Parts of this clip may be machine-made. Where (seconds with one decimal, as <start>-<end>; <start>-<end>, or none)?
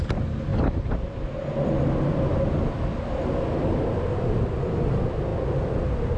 none